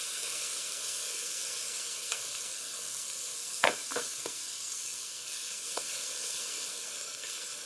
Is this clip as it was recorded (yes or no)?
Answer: no